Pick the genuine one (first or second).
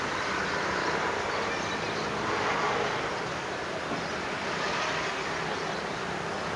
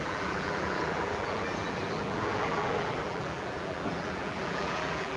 first